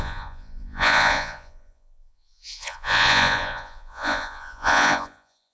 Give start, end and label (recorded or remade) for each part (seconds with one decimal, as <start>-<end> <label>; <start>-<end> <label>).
0.0-5.5 remade